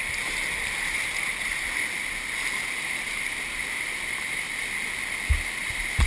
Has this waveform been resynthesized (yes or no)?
no